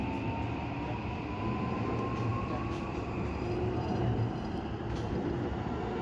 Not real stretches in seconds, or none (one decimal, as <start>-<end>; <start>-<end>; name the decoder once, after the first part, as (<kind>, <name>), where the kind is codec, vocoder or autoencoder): 2.3-6.0 (vocoder, BigVGAN v2)